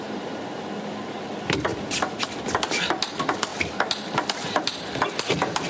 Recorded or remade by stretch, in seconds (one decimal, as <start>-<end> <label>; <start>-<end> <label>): 0.0-1.7 recorded; 1.7-2.2 remade; 2.2-3.5 recorded; 3.5-5.7 remade